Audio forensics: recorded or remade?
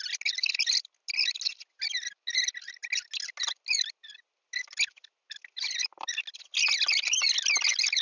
recorded